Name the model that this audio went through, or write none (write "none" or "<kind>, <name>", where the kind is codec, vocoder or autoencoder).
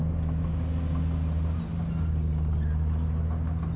none